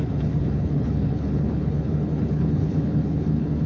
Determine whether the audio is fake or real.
fake